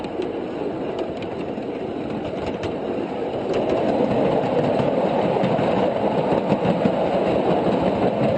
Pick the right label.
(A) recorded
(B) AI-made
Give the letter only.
A